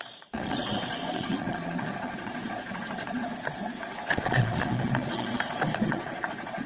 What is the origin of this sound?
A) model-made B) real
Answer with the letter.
A